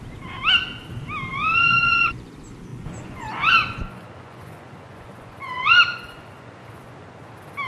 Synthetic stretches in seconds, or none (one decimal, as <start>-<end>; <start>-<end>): 1.3-2.3; 2.7-7.3